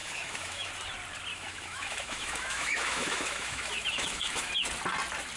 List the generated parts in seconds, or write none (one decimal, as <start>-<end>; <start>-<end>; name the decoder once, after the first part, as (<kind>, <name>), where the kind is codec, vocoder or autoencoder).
0.0-0.7 (autoencoder, DAC-VAE); 1.3-4.5